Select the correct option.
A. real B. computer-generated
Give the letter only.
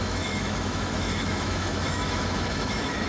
B